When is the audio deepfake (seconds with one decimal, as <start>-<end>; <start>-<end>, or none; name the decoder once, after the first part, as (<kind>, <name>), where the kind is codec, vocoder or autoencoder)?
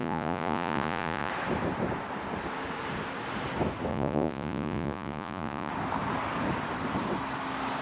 0.0-1.3 (vocoder, Vocos); 3.9-5.7